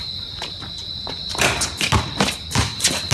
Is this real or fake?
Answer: real